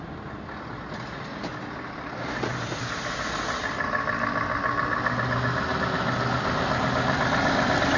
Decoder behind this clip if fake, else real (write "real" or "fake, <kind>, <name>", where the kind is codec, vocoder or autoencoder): real